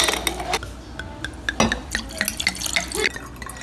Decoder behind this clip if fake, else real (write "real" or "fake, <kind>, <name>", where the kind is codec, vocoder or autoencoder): real